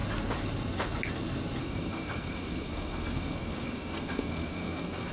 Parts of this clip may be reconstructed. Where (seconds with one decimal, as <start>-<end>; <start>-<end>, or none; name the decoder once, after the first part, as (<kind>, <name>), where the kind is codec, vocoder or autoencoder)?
1.6-5.1 (codec, SNAC)